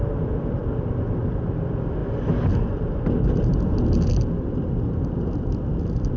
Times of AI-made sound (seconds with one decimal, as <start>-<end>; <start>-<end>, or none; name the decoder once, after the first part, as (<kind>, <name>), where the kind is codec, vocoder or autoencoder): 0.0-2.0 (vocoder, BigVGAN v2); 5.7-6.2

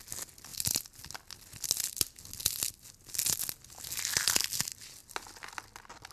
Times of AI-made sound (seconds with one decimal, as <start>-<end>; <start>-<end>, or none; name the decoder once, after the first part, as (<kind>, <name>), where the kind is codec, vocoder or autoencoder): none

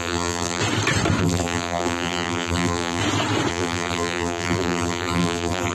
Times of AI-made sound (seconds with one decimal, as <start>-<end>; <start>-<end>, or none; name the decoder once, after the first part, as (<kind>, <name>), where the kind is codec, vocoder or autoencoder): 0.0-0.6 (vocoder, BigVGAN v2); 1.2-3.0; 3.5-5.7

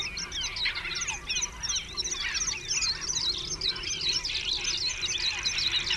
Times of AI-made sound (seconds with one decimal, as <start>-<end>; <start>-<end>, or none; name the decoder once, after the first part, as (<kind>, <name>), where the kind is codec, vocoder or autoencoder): none

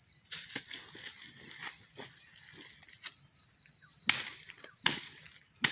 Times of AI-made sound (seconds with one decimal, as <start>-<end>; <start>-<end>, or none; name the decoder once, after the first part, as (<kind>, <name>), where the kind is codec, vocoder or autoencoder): 4.3-5.2 (vocoder, BigVGAN v2)

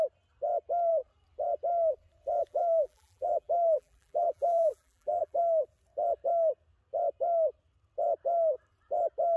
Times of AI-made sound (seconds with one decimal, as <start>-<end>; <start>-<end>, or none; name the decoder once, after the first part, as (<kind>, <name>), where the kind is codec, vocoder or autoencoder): 2.5-5.4 (vocoder, BigVGAN v2)

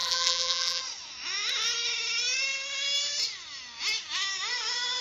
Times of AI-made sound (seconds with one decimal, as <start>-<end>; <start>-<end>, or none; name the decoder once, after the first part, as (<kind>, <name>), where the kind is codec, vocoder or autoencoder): 0.0-0.8 (vocoder, BigVGAN v2)